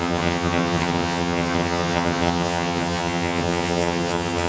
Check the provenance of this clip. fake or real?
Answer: fake